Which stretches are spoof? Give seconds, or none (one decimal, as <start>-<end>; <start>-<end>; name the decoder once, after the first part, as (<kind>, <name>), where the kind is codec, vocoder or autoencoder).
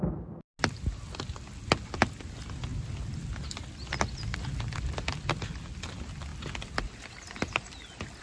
none